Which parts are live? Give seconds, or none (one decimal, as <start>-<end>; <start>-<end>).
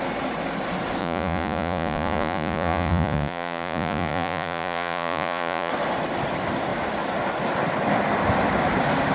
0.0-1.0; 5.7-9.1